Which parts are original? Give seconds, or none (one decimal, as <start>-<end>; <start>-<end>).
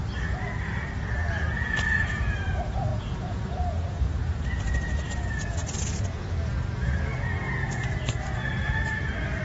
0.0-1.1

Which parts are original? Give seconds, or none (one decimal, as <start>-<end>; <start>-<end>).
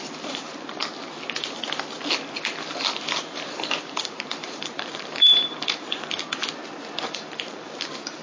0.8-3.2; 6.4-7.0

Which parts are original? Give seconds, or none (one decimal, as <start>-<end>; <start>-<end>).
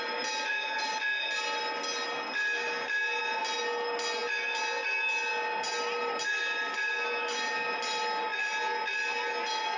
0.0-9.8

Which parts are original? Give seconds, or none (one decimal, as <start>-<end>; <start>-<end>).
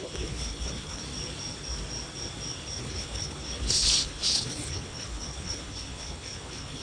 1.0-2.8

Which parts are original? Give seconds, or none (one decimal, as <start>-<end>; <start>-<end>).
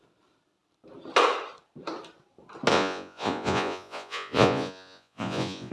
0.0-2.7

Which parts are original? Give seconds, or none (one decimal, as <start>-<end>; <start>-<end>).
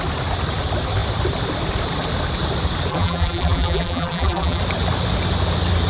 0.0-2.9; 4.6-5.9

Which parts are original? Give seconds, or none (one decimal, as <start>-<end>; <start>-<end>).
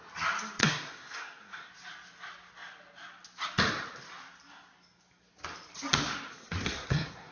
0.0-0.6; 1.7-6.3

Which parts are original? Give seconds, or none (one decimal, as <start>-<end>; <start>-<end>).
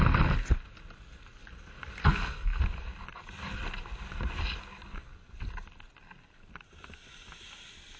0.0-2.0; 2.6-8.0